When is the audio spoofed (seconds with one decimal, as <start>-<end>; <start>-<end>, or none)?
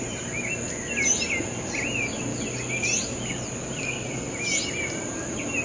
none